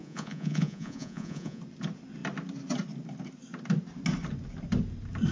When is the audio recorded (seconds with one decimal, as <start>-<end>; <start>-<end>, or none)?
1.6-5.3